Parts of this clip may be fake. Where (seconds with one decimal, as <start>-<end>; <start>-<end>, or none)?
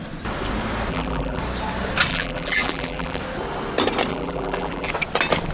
0.9-1.4; 2.1-3.2; 4.1-4.9